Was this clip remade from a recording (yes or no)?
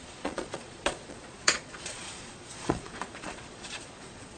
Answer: yes